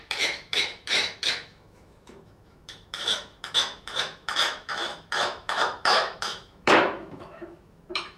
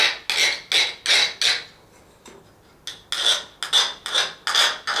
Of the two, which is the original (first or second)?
second